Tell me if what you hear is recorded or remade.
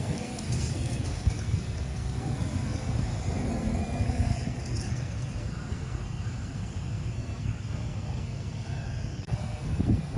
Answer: remade